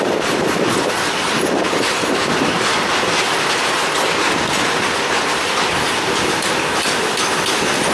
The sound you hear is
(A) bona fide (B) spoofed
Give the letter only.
A